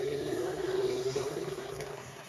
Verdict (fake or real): fake